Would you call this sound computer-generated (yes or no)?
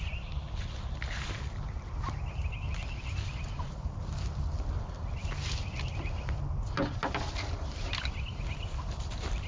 no